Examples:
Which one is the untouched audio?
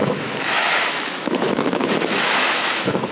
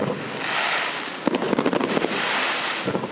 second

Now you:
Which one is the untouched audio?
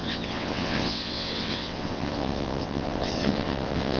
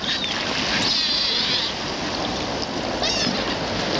second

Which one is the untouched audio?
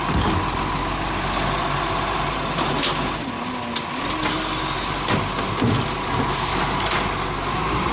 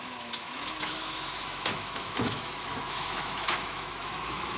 first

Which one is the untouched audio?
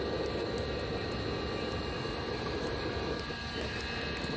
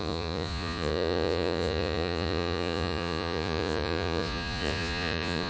first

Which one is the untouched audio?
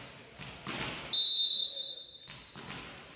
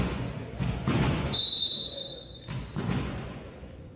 first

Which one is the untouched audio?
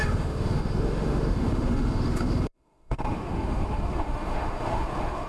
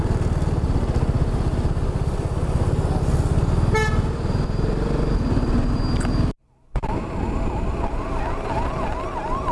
second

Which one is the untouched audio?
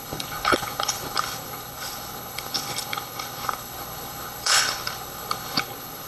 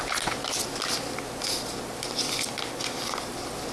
second